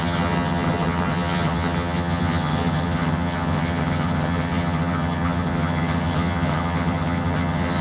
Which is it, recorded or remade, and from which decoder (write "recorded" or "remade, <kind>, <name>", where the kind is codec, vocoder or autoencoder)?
remade, vocoder, HiFi-GAN